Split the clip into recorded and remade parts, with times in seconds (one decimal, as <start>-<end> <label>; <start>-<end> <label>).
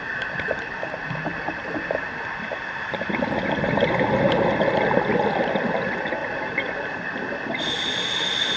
0.0-6.2 recorded; 6.2-8.0 remade; 8.0-8.6 recorded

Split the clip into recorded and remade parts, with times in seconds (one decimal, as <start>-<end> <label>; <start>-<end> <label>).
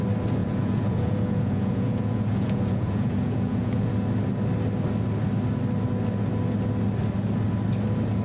0.0-0.4 recorded; 0.4-3.9 remade; 3.9-8.2 recorded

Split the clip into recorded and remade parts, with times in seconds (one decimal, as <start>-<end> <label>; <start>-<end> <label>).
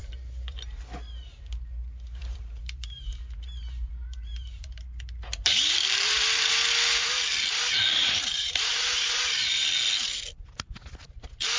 0.0-0.7 remade; 0.7-2.2 recorded; 2.2-6.5 remade; 6.5-8.0 recorded; 8.0-9.7 remade; 9.7-11.6 recorded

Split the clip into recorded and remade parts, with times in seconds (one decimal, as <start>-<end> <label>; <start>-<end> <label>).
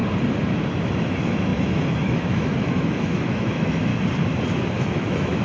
0.0-0.7 recorded; 0.7-3.9 remade; 3.9-4.8 recorded; 4.8-5.4 remade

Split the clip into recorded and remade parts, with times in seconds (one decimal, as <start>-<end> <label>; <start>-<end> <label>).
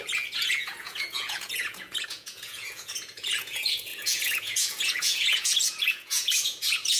0.0-7.0 remade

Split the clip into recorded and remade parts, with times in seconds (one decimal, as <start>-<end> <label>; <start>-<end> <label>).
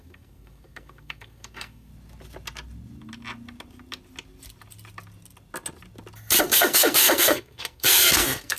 0.0-1.9 remade; 1.9-6.4 recorded; 6.4-8.6 remade